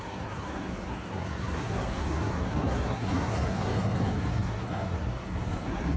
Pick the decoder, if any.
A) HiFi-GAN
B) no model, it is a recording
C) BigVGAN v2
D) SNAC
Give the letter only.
D